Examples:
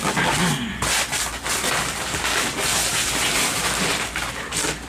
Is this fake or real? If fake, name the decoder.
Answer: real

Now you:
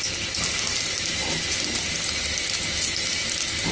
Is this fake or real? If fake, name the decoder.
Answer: real